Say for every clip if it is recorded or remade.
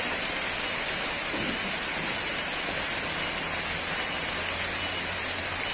recorded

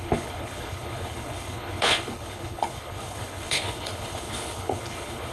remade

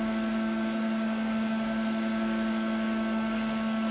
remade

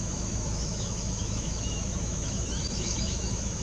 remade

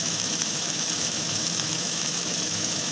remade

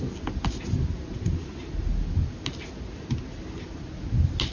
recorded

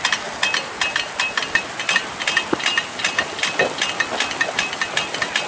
recorded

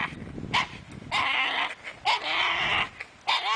recorded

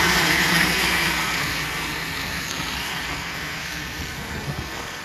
remade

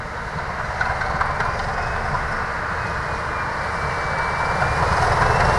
recorded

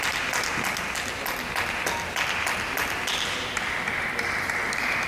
recorded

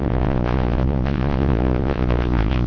remade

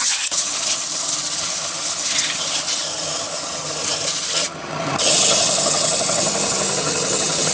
remade